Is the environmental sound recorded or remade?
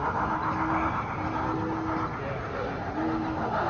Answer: recorded